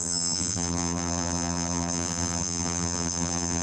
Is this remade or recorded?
remade